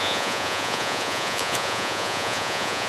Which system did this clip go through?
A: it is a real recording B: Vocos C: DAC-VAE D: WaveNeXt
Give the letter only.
B